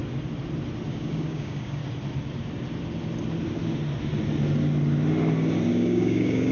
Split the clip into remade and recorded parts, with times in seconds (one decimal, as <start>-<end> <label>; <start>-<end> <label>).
0.0-0.9 recorded; 0.9-1.8 remade; 1.8-5.7 recorded; 5.7-6.5 remade